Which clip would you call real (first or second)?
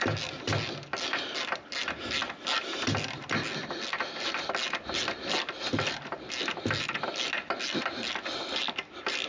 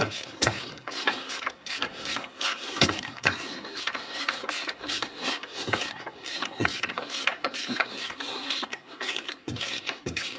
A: first